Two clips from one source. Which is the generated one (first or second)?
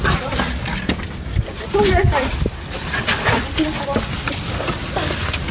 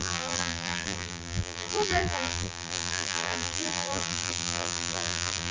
second